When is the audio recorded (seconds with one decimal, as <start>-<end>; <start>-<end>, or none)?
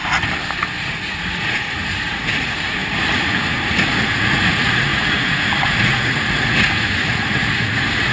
0.0-0.8